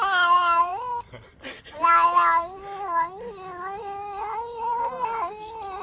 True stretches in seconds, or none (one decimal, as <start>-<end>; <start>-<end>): 0.0-4.7